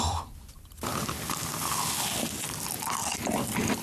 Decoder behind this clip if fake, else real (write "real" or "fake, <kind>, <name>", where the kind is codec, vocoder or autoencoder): real